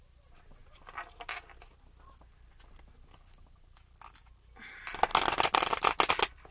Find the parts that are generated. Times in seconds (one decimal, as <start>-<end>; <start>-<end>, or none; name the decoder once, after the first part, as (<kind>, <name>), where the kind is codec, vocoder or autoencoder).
none